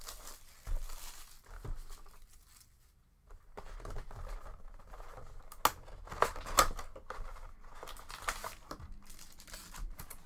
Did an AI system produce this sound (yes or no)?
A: no